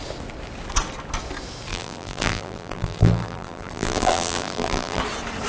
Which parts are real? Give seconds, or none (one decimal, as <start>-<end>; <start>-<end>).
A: 0.0-1.7; 5.0-5.5